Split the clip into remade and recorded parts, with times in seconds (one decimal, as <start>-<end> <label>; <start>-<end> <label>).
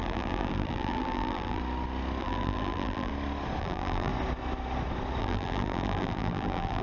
0.0-1.6 remade; 1.6-2.2 recorded; 2.2-3.1 remade; 3.1-3.6 recorded; 3.6-4.1 remade; 4.1-5.2 recorded; 5.2-6.8 remade